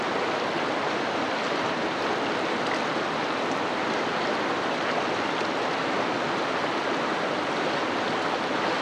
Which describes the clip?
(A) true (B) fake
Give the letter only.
A